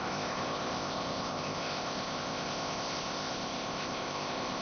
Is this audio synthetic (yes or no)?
yes